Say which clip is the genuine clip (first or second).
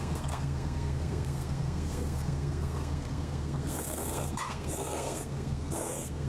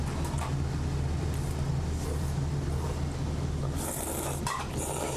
second